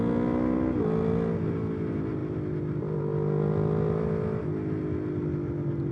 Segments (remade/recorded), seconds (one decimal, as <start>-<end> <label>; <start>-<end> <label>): 0.0-5.9 recorded